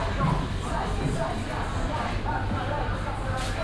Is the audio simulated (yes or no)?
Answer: no